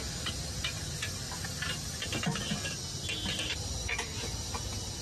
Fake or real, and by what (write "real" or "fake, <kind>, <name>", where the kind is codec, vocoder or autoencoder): real